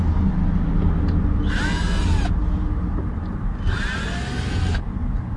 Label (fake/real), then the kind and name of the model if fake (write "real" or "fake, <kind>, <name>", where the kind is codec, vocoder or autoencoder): real